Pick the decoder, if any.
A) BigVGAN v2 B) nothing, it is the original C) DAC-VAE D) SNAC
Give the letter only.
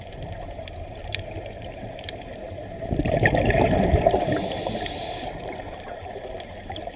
A